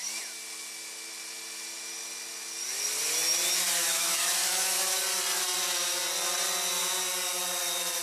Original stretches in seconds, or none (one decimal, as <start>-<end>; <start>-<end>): 0.0-3.8; 5.0-8.0